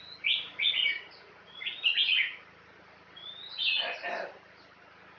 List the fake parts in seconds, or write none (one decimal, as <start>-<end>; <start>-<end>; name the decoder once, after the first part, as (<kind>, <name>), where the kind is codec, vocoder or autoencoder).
0.9-1.8 (vocoder, Vocos)